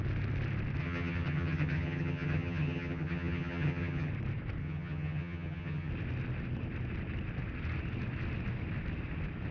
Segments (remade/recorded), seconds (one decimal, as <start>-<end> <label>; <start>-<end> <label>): 0.0-0.8 recorded; 0.8-4.1 remade; 4.1-4.6 recorded; 4.6-5.9 remade; 5.9-9.5 recorded